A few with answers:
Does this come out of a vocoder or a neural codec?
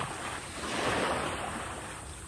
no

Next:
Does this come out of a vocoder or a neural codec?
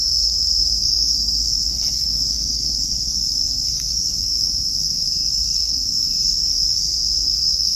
yes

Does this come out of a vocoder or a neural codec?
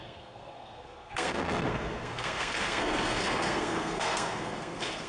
yes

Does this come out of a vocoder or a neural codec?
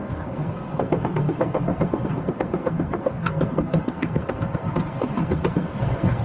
yes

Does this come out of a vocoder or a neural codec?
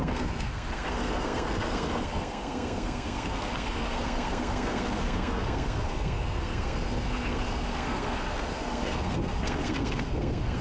yes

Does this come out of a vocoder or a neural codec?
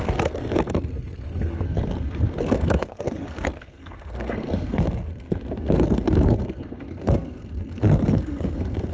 yes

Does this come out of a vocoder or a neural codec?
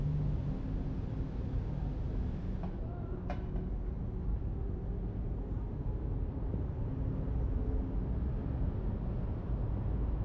no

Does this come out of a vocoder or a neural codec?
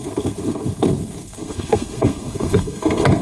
yes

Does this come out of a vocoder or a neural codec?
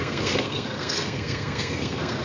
yes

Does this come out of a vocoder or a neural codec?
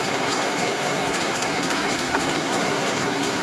yes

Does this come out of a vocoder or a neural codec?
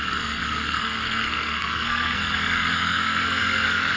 yes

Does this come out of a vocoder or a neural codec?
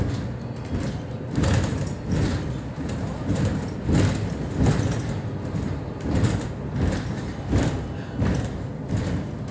no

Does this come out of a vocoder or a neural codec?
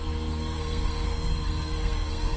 yes